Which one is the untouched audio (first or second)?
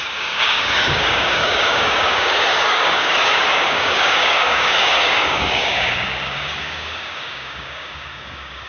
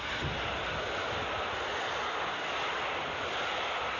second